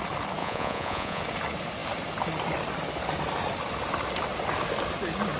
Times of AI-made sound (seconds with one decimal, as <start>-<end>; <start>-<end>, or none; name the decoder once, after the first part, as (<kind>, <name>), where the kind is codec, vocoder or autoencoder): 0.4-1.2 (vocoder, Vocos)